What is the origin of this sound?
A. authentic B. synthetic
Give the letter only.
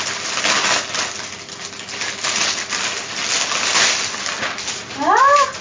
A